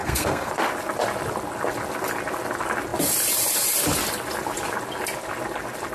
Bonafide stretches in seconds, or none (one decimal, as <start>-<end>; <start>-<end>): 0.5-5.9